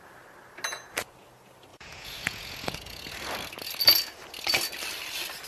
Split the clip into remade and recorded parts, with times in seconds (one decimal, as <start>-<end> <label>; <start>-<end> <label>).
0.0-1.7 recorded; 1.7-3.1 remade; 3.1-5.5 recorded